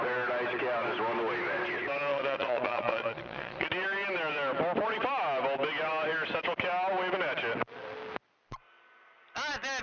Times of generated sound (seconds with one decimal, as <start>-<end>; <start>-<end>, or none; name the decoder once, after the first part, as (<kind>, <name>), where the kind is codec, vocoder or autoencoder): 2.1-3.7 (vocoder, Vocos)